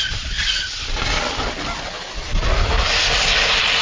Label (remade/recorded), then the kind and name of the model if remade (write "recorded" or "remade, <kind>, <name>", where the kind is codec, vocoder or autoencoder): recorded